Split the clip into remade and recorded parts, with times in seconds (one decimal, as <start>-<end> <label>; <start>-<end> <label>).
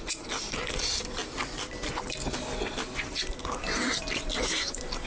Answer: 0.0-5.1 recorded